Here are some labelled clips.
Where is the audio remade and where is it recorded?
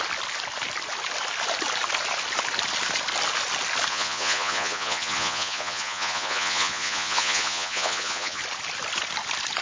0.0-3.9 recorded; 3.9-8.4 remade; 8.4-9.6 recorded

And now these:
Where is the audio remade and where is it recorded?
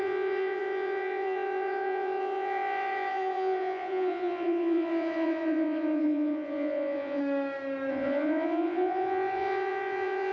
0.0-7.2 remade; 7.2-7.9 recorded; 7.9-10.3 remade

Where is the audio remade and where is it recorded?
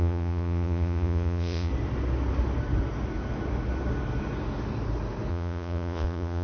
0.0-1.7 remade; 1.7-5.3 recorded; 5.3-6.4 remade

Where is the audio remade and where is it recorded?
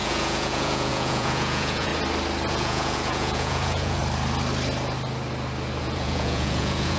0.0-1.9 remade; 1.9-2.5 recorded; 2.5-4.0 remade; 4.0-5.8 recorded; 5.8-7.0 remade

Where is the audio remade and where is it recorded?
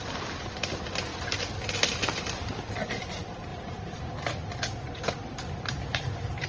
0.0-3.5 recorded; 3.5-4.1 remade; 4.1-6.5 recorded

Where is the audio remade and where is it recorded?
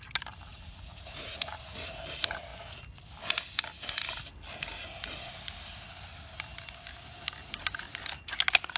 0.0-0.5 recorded; 0.5-2.0 remade; 2.0-8.8 recorded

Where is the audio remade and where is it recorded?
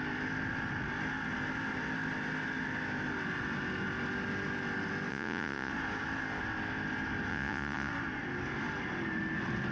0.0-5.1 recorded; 5.1-5.7 remade; 5.7-7.3 recorded; 7.3-7.9 remade; 7.9-9.7 recorded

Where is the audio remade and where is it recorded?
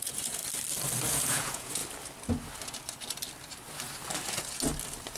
0.0-0.4 remade; 0.4-1.1 recorded; 1.1-1.8 remade; 1.8-5.2 recorded